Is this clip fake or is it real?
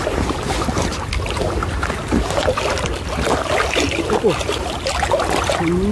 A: real